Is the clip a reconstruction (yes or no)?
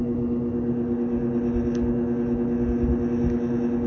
no